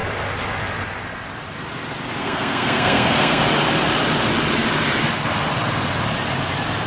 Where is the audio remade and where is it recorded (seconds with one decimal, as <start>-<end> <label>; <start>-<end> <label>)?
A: 0.0-2.2 recorded; 2.2-3.4 remade; 3.4-6.9 recorded